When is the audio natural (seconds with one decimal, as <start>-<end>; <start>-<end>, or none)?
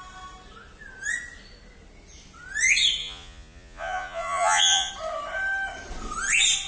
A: 0.0-3.0; 4.9-6.7